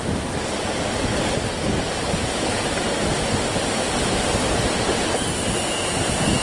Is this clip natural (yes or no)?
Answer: yes